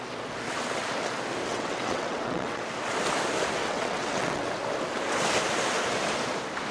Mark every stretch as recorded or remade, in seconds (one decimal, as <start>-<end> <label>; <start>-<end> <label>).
0.0-1.5 recorded; 1.5-2.6 remade; 2.6-3.6 recorded; 3.6-4.5 remade; 4.5-6.7 recorded